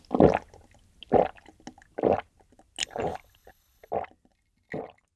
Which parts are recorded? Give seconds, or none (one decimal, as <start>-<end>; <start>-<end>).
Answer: 0.0-2.8; 3.9-5.2

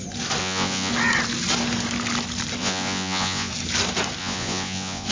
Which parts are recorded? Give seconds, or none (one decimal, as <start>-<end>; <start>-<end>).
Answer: 0.0-0.4; 0.9-2.6; 3.5-4.2

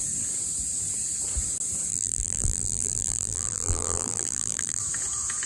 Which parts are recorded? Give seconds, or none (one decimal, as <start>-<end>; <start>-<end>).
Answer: 0.0-1.9; 4.8-5.5

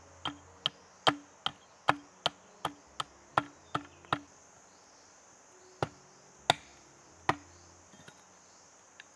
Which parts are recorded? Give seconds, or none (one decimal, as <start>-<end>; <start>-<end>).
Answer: 0.0-9.2

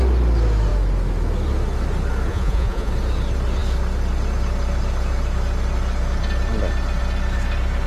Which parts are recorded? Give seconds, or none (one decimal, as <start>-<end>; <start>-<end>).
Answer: 0.0-2.3; 2.9-7.9

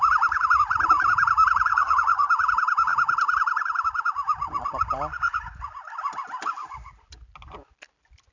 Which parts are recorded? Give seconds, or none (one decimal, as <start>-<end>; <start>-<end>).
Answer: 0.0-1.7; 2.3-8.3